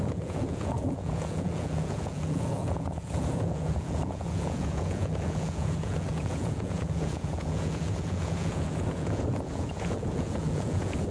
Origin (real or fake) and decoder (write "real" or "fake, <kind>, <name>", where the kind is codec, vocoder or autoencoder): fake, vocoder, Vocos